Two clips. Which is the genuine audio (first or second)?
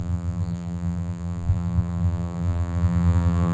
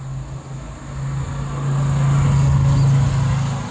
second